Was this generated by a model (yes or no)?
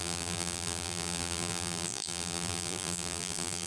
yes